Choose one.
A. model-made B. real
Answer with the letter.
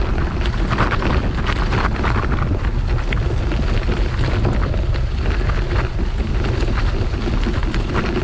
B